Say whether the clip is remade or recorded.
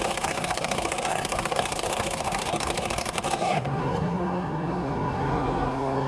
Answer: remade